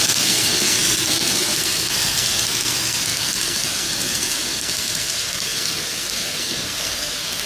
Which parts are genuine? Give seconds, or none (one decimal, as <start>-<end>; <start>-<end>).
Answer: none